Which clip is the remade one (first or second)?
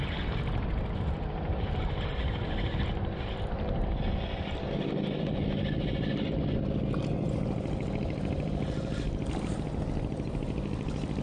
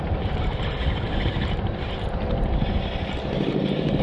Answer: second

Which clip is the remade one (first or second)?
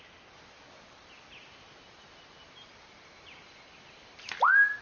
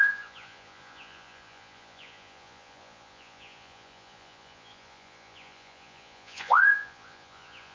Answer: second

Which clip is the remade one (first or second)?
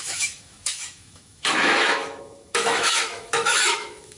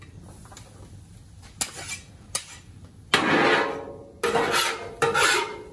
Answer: first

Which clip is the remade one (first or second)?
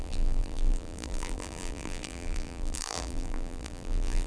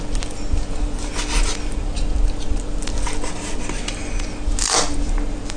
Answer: first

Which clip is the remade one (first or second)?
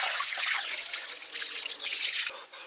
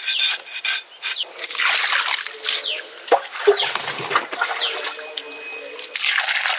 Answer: first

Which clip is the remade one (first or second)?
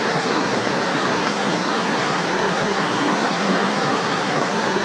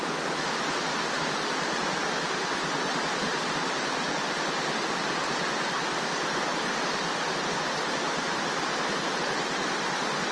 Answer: first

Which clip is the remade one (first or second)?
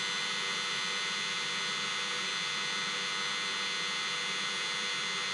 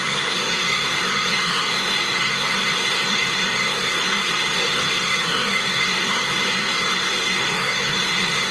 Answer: second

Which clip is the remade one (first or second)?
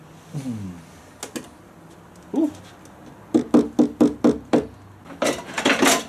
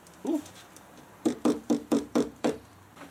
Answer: second